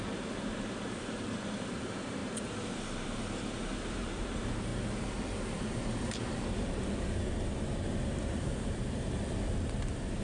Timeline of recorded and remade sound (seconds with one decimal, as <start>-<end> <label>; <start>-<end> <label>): 0.0-4.7 remade; 4.7-5.3 recorded; 5.3-10.2 remade